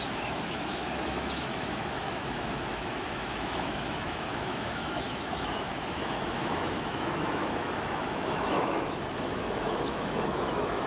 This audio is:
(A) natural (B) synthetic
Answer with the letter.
B